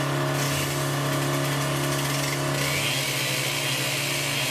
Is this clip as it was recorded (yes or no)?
yes